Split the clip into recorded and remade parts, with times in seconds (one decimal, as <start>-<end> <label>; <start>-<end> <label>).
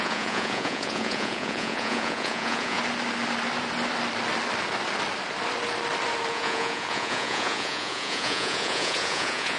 0.0-2.8 remade; 2.8-6.3 recorded; 6.3-9.6 remade